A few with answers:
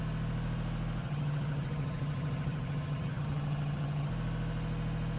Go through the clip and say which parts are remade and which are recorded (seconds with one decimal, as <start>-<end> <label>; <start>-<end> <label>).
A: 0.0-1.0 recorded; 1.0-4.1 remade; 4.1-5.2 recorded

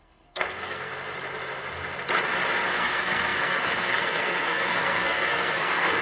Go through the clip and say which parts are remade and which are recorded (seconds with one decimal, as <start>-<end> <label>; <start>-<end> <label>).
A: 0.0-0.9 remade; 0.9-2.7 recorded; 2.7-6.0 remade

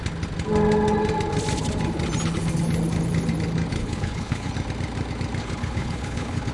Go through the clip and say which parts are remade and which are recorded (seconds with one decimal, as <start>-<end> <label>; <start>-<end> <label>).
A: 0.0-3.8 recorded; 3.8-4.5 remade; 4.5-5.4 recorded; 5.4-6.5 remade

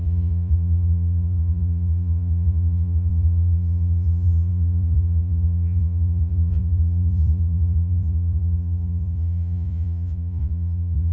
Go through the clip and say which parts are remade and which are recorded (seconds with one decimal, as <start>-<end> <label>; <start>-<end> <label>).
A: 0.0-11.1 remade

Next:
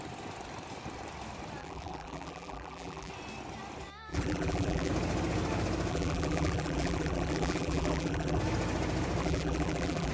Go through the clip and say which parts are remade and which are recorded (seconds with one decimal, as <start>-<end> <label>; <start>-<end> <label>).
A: 0.0-1.6 recorded; 1.6-3.1 remade; 3.1-4.1 recorded; 4.1-4.9 remade; 4.9-5.9 recorded; 5.9-8.4 remade; 8.4-9.2 recorded; 9.2-10.1 remade